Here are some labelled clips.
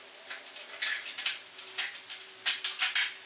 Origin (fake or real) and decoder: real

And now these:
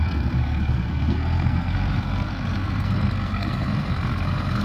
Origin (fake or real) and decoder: fake, codec, SNAC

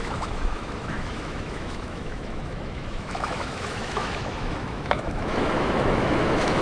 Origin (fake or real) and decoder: fake, autoencoder, DAC-VAE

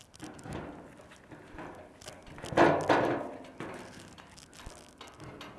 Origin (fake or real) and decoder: real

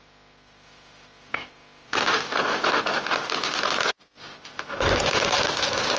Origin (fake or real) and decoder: real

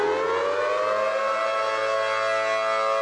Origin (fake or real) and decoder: real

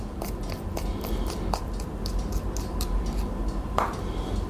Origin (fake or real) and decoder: real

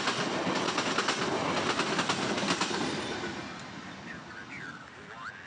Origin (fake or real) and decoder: real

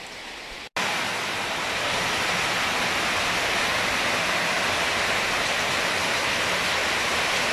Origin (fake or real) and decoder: real